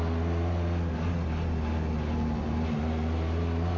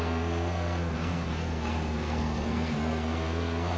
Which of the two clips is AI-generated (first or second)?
second